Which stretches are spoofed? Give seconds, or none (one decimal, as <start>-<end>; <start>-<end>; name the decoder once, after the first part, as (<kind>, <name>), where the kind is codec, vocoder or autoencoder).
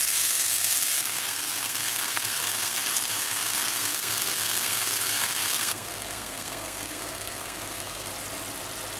0.0-8.1 (codec, SNAC)